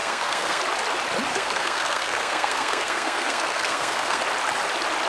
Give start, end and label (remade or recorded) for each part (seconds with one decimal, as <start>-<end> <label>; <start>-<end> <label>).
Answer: 0.0-0.6 remade; 0.6-1.3 recorded; 1.3-4.2 remade; 4.2-5.1 recorded